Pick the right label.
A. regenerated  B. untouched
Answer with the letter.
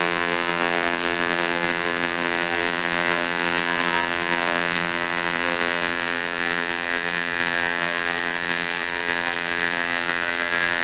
A